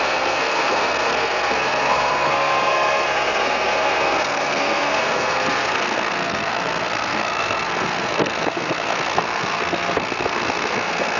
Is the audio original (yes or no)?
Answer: no